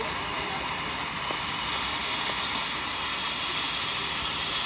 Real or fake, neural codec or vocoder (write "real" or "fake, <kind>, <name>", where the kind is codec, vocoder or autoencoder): real